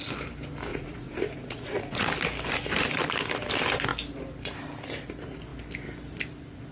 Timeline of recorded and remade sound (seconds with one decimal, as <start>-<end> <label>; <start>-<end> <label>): 0.0-0.7 recorded; 0.7-2.1 remade; 2.1-6.7 recorded